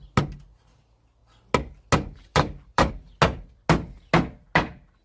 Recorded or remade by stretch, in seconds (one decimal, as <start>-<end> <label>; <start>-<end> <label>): 0.0-2.3 recorded; 2.3-2.9 remade; 2.9-5.0 recorded